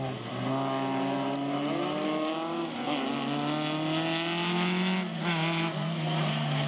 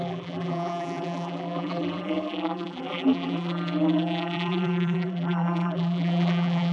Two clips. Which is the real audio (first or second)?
first